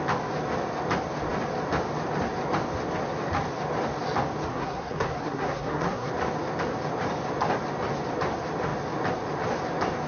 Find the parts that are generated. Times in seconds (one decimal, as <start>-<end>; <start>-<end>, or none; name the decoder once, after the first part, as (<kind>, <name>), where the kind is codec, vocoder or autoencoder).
4.5-6.1 (codec, SNAC)